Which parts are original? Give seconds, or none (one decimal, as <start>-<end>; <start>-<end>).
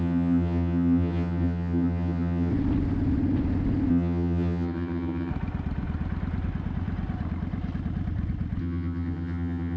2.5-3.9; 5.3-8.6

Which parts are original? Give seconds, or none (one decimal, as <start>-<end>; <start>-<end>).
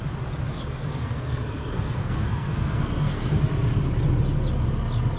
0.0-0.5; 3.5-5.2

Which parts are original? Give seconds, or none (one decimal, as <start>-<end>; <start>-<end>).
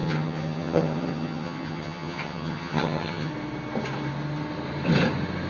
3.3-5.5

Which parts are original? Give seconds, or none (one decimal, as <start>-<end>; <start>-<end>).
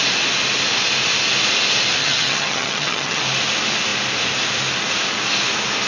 0.0-2.0; 3.2-5.9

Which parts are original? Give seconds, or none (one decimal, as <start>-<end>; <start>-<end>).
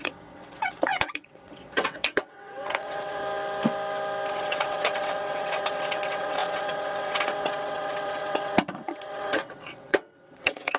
3.2-4.3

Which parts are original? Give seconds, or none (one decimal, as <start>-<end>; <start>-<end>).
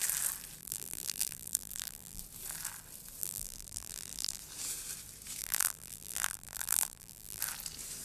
0.0-0.6; 2.2-3.2; 4.4-5.4; 7.4-8.0